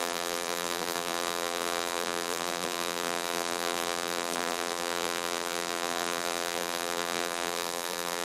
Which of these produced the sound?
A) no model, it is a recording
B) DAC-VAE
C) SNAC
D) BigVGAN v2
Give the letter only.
D